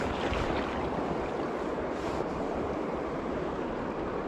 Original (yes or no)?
yes